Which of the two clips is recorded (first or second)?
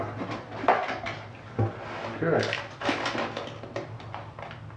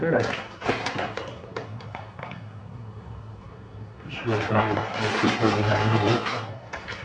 first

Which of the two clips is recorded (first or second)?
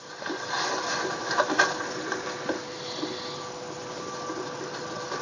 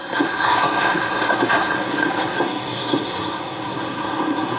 first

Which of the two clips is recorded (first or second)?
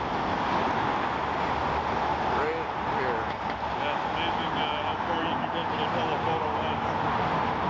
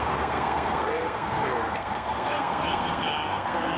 first